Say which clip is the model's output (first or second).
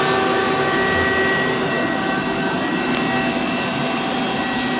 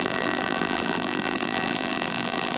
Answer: second